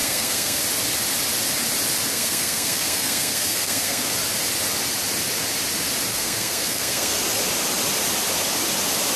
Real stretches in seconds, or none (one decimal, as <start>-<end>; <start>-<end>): 0.6-2.1; 4.1-6.1; 7.2-9.2